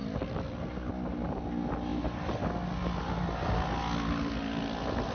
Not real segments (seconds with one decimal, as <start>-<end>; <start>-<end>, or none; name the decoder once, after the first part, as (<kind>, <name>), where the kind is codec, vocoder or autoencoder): none